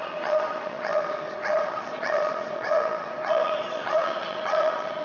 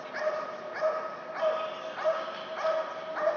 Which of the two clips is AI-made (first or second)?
first